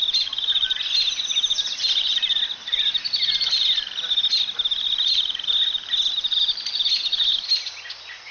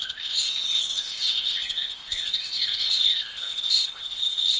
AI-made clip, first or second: second